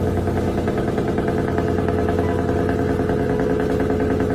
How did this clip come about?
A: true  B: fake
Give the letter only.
A